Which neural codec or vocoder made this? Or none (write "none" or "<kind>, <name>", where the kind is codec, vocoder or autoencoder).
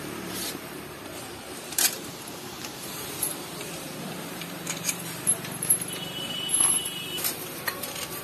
vocoder, BigVGAN v2